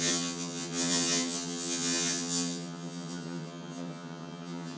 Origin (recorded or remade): remade